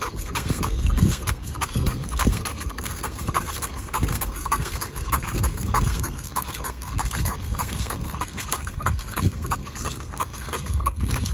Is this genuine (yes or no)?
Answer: no